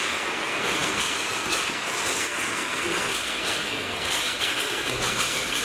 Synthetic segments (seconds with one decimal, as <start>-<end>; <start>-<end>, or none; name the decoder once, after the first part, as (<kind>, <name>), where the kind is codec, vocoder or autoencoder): 0.0-5.6 (codec, SNAC)